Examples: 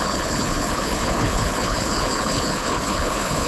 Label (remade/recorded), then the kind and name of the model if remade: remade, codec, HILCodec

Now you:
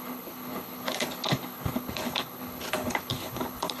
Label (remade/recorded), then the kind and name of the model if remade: remade, codec, HILCodec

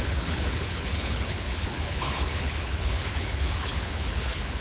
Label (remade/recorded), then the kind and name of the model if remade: remade, codec, HILCodec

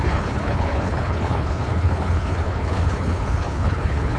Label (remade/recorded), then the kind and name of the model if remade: remade, codec, HILCodec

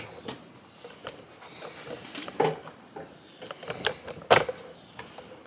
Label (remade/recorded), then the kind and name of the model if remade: recorded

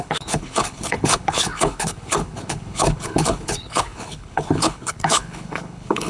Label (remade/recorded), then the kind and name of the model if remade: remade, codec, HILCodec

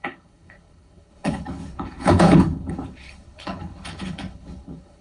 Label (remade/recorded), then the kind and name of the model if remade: remade, codec, HILCodec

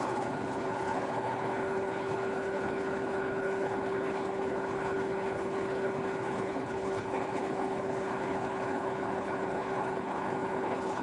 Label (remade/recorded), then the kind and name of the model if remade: remade, codec, HILCodec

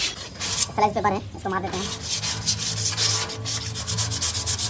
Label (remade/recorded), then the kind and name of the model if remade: recorded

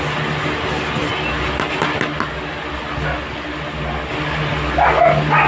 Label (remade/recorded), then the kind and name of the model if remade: recorded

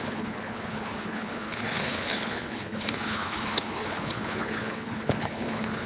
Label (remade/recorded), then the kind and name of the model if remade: remade, codec, HILCodec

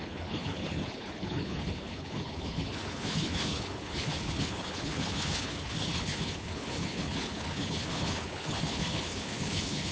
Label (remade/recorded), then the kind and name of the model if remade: remade, codec, HILCodec